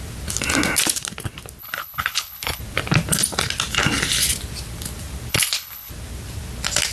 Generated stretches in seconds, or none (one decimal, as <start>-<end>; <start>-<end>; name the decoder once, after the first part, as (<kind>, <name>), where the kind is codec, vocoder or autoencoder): 1.6-2.6 (codec, HILCodec); 5.3-5.9